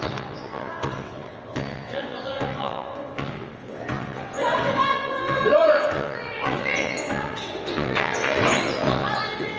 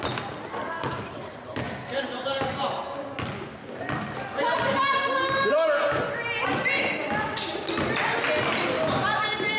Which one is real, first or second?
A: second